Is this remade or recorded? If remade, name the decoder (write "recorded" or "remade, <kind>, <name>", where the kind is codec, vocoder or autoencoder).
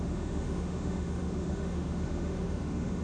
remade, autoencoder, DAC-VAE